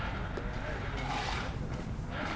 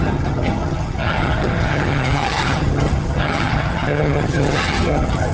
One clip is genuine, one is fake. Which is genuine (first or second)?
first